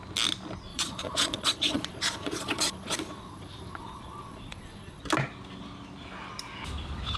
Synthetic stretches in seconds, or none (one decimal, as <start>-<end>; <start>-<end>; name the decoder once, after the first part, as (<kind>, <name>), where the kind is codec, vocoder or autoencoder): 0.7-5.0 (vocoder, Vocos)